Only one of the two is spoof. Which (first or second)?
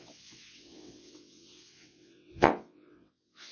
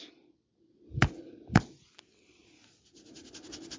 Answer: first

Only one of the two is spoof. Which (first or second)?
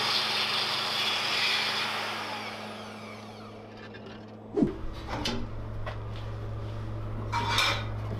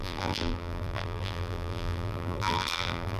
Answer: second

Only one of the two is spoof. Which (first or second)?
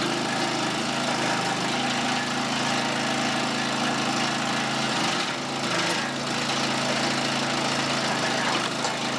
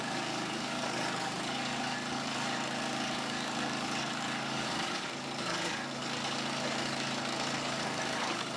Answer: second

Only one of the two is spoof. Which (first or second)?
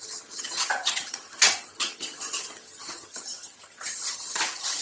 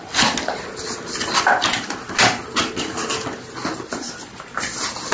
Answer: first